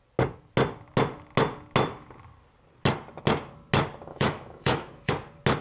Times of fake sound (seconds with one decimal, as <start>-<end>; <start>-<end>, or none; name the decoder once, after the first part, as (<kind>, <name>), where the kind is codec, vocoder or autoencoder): 4.1-5.1 (autoencoder, DAC-VAE)